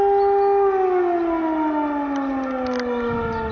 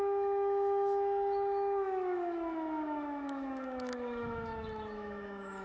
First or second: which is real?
first